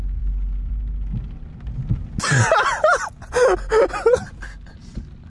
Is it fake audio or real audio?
real